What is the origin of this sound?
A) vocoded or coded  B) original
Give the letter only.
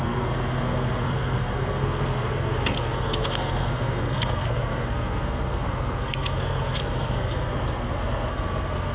A